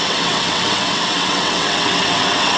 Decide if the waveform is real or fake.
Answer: fake